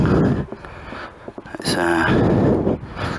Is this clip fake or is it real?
real